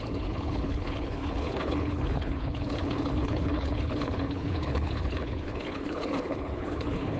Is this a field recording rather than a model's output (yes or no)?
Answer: no